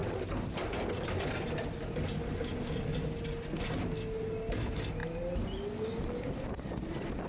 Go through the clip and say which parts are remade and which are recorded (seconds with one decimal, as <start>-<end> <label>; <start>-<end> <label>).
0.0-7.3 recorded